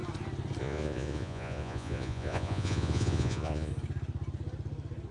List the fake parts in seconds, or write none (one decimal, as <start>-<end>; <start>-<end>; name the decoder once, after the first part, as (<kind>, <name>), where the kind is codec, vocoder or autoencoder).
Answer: 0.6-3.7 (vocoder, Vocos)